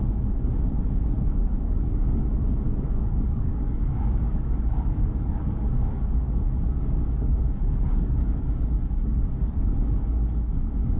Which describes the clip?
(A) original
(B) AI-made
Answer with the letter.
B